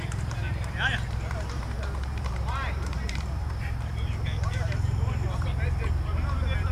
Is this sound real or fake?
fake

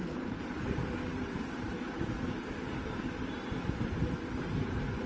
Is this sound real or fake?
real